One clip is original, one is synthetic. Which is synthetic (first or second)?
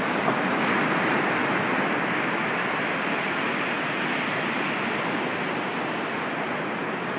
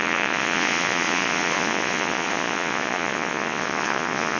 second